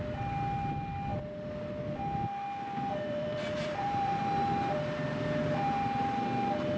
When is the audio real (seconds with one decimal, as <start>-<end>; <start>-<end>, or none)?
0.0-2.9; 4.2-6.8